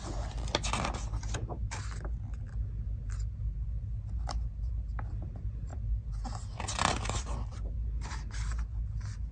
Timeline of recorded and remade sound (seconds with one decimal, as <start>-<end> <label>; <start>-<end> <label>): 0.0-9.3 recorded